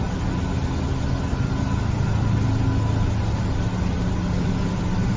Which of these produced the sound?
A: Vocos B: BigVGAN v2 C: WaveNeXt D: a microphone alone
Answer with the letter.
D